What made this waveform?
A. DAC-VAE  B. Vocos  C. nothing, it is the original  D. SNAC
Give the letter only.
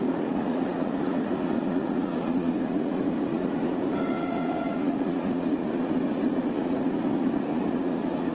B